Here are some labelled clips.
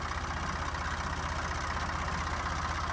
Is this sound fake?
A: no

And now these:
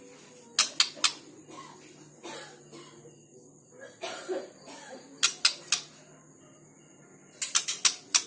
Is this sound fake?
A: no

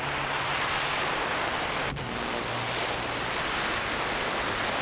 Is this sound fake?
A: no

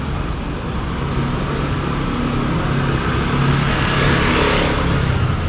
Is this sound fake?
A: no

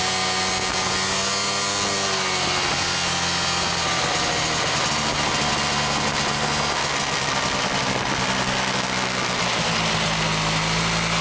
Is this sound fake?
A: no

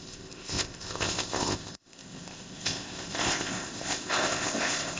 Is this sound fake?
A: yes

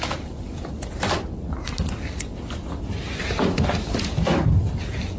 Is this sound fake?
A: no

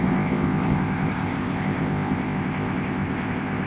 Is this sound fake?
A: yes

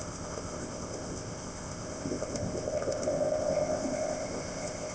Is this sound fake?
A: yes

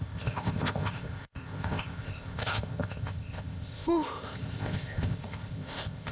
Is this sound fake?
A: yes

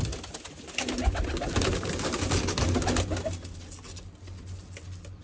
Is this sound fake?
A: no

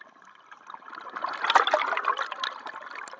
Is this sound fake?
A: no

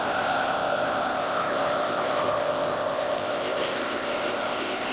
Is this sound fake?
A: yes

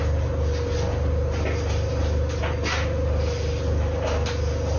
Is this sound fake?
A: no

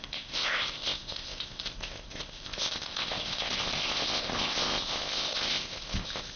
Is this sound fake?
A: yes